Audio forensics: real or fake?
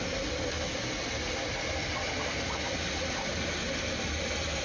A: real